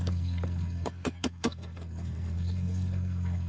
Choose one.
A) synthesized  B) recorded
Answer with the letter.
A